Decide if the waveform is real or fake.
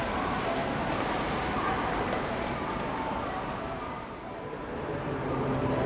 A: fake